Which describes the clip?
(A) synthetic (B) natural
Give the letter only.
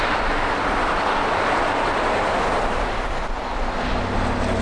B